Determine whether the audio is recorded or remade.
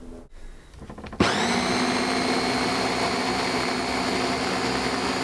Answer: recorded